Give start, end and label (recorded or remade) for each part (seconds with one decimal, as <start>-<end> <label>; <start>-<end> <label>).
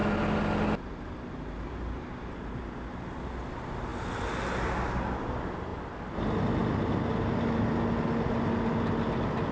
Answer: 0.0-9.5 recorded